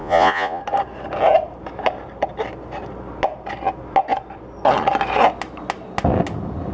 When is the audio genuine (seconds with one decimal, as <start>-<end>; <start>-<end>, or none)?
0.6-6.7